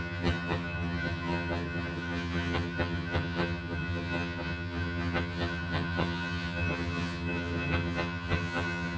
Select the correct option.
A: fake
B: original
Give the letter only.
A